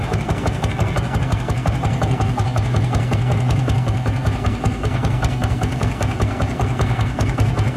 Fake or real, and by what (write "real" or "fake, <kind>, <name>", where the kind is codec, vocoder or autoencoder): fake, codec, SNAC